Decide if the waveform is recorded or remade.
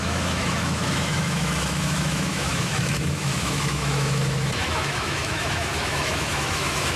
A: remade